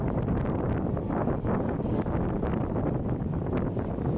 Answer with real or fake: real